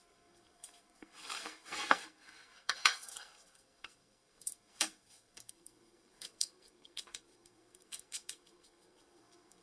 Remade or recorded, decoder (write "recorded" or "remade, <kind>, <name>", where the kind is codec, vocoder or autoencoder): remade, codec, SNAC